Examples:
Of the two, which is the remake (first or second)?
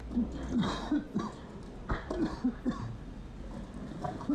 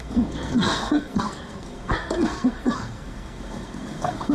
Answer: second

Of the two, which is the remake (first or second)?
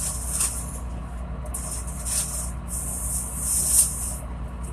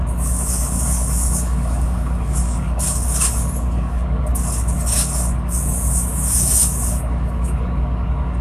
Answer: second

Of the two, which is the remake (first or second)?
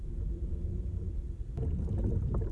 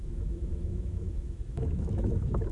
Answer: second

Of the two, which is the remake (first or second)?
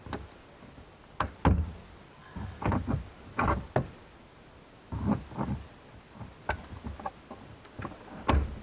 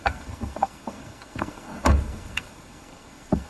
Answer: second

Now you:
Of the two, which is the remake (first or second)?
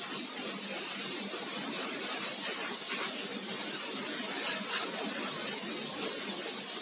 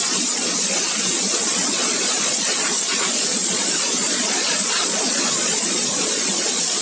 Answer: second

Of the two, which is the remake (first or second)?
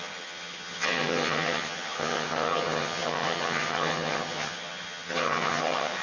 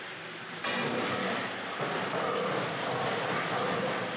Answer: first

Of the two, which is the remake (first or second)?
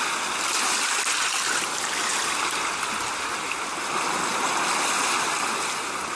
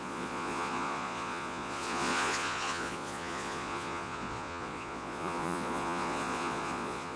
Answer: second